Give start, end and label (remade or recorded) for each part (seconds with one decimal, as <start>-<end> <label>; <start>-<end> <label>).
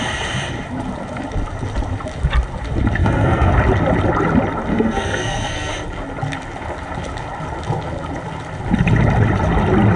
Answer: 0.0-3.0 recorded; 3.0-3.5 remade; 3.5-4.7 recorded; 4.7-5.7 remade; 5.7-10.0 recorded